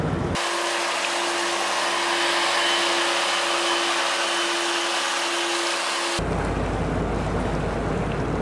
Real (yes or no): yes